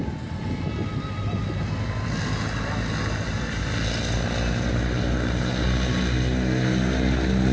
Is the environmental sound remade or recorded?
recorded